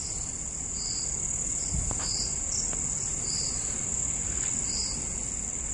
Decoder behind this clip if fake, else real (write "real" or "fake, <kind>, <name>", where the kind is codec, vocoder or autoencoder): real